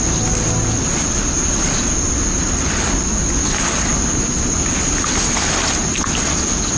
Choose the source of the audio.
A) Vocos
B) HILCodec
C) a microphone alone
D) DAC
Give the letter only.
C